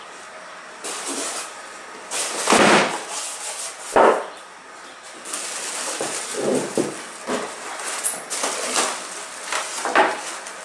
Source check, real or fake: real